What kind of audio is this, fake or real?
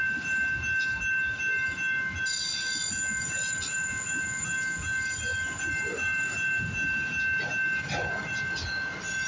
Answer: real